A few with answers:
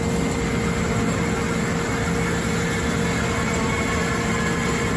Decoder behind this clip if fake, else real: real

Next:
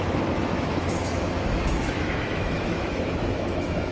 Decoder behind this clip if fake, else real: fake, autoencoder, DAC-VAE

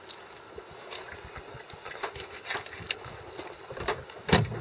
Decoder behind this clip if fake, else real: real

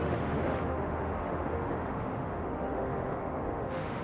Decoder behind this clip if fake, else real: fake, autoencoder, DAC-VAE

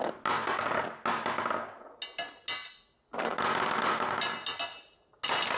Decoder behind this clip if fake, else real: real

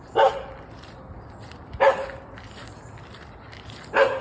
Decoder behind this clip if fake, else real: real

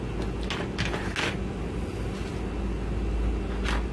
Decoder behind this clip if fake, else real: real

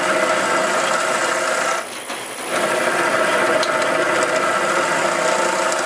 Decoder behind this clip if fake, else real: real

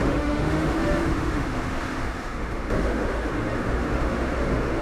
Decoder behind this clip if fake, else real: fake, autoencoder, DAC-VAE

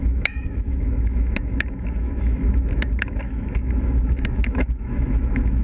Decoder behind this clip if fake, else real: fake, autoencoder, DAC-VAE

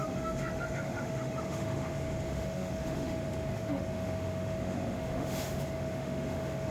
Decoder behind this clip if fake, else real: fake, autoencoder, DAC-VAE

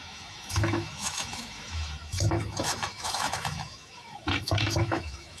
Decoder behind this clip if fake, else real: fake, autoencoder, DAC-VAE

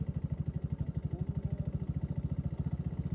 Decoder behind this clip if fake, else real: real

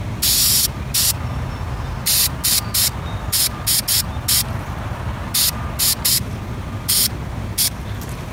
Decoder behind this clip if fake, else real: real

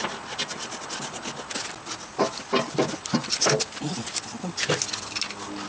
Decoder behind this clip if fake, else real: real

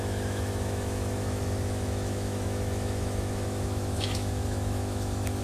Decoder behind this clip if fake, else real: fake, autoencoder, DAC-VAE